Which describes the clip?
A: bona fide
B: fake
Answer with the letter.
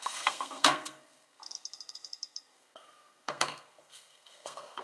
B